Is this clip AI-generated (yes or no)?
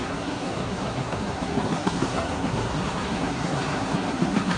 yes